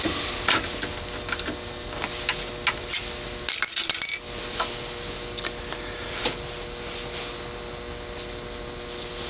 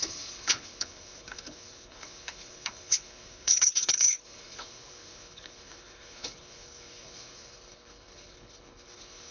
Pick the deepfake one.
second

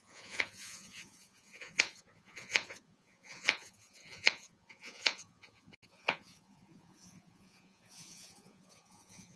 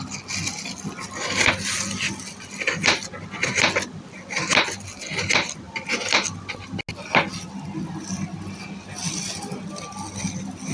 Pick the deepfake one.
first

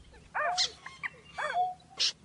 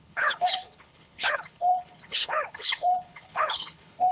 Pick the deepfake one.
second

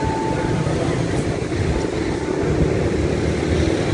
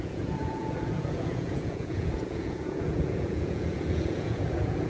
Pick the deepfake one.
second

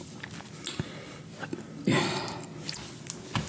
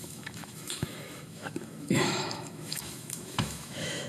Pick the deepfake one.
second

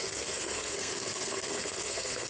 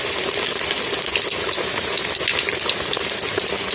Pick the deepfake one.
first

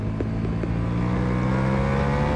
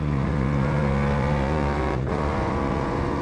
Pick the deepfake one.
second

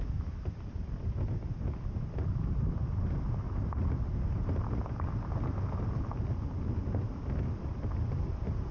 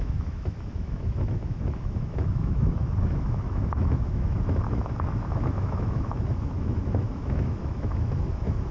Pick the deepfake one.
second